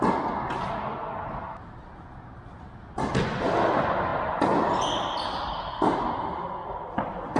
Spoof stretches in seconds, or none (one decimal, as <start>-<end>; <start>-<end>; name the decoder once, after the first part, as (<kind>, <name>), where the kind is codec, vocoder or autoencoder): none